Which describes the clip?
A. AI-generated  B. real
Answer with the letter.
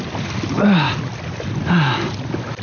B